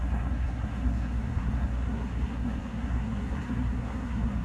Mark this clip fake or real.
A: fake